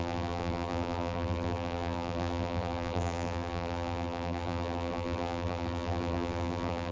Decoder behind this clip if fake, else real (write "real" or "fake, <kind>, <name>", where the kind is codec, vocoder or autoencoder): fake, vocoder, BigVGAN v2